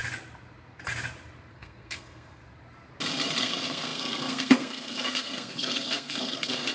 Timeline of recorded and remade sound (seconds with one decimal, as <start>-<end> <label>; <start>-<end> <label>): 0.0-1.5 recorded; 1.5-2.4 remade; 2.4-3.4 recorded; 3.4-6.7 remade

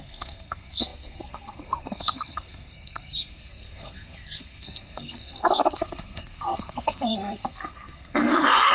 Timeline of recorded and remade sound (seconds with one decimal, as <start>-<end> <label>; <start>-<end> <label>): 0.0-8.7 remade

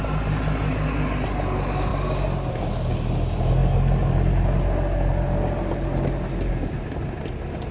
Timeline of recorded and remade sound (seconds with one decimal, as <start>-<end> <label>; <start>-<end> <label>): 0.0-7.7 recorded

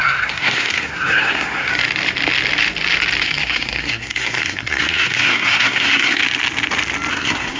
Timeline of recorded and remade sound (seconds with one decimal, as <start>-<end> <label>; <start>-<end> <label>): 0.0-1.7 remade; 1.7-3.2 recorded; 3.2-6.2 remade; 6.2-7.1 recorded; 7.1-7.6 remade